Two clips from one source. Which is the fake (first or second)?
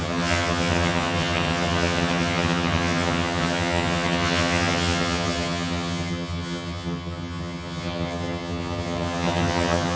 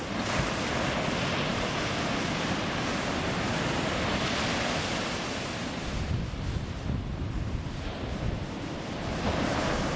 first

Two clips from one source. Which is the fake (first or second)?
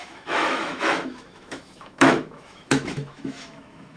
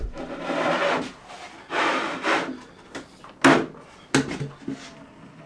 first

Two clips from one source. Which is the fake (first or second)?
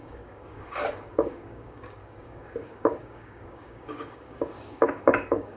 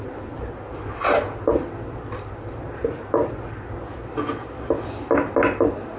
first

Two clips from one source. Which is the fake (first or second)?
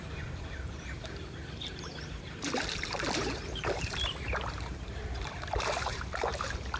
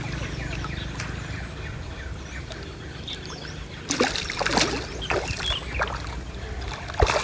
first